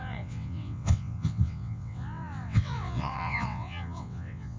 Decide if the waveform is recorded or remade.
remade